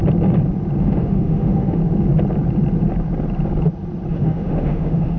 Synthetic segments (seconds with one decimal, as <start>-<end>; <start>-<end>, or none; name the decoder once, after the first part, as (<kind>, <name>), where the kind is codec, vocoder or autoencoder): 0.8-1.8 (autoencoder, DAC-VAE); 4.1-5.2